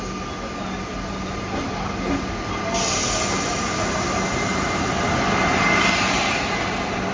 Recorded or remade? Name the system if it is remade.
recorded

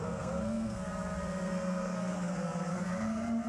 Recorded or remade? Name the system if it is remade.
remade, codec, SNAC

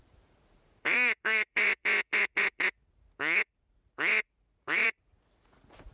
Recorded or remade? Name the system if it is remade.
remade, vocoder, Vocos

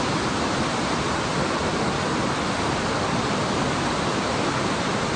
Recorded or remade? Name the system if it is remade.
recorded